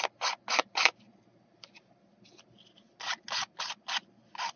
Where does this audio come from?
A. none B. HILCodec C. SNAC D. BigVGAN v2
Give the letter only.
A